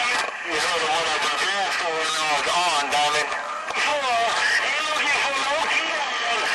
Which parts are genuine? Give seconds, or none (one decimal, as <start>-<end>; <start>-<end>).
0.0-6.5